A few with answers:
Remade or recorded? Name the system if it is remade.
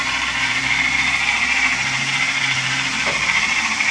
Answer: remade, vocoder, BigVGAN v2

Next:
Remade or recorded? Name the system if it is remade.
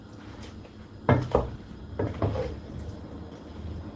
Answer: recorded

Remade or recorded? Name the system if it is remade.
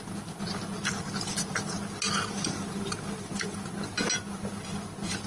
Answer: recorded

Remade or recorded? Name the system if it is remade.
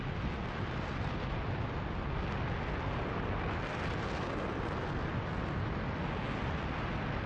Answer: recorded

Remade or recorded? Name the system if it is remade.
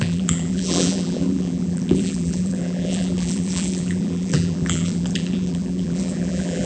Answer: remade, vocoder, BigVGAN v2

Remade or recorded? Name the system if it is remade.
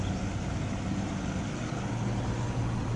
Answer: recorded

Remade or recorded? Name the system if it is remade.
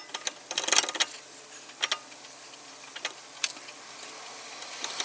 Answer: recorded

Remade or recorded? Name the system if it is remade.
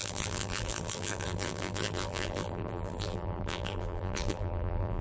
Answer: remade, vocoder, BigVGAN v2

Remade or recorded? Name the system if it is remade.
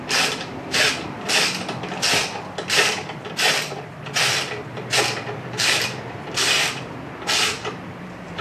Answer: remade, vocoder, BigVGAN v2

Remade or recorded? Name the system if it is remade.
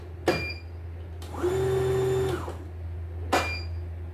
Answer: recorded